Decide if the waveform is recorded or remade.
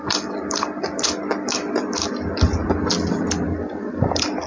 remade